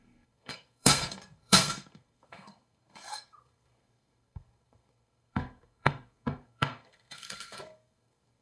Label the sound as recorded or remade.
remade